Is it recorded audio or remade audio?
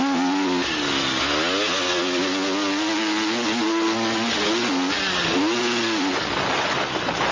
recorded